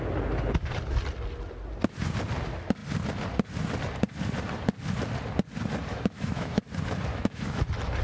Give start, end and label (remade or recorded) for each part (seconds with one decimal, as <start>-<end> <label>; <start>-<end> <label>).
0.0-5.9 recorded; 5.9-6.6 remade; 6.6-7.1 recorded; 7.1-7.6 remade; 7.6-8.0 recorded